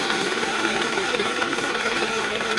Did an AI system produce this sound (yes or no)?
yes